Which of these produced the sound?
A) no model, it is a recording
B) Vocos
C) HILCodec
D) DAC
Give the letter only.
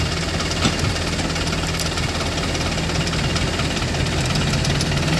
A